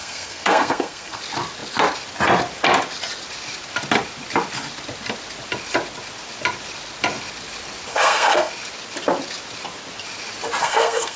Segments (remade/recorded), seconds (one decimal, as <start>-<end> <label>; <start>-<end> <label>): 0.0-1.2 remade; 1.2-7.9 recorded; 7.9-8.5 remade; 8.5-10.6 recorded; 10.6-11.2 remade